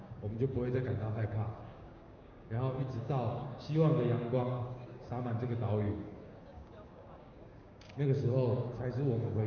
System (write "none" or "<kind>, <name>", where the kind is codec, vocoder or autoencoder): codec, DAC